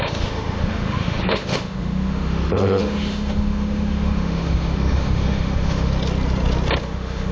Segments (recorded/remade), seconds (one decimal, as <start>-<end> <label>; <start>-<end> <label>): 0.0-5.9 remade; 5.9-6.8 recorded; 6.8-7.3 remade